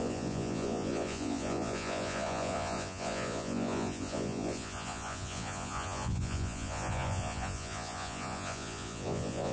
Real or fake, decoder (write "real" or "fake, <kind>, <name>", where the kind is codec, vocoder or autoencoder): fake, vocoder, Vocos